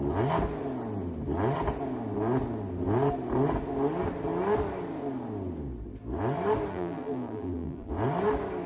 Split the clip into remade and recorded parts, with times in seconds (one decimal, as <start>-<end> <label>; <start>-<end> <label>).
0.0-6.7 recorded; 6.7-7.9 remade; 7.9-8.7 recorded